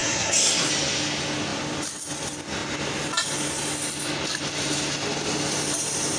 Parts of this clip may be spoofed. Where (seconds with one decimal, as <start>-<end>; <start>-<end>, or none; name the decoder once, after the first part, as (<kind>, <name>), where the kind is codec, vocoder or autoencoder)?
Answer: 0.0-0.7 (codec, SNAC)